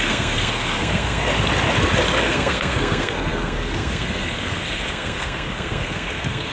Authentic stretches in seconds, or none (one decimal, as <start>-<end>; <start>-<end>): 1.3-2.2